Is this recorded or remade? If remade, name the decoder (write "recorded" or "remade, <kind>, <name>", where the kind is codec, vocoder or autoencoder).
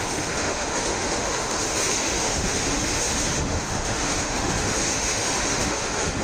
remade, autoencoder, DAC-VAE